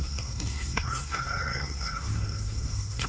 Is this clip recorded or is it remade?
remade